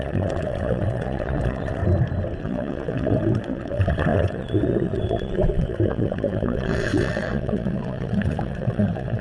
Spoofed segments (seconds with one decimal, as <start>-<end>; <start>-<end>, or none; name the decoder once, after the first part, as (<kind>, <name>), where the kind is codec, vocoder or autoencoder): 0.0-1.8 (vocoder, WaveNeXt); 2.4-9.2